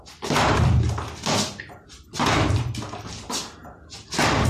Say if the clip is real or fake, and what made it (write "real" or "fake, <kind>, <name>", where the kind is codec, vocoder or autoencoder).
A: real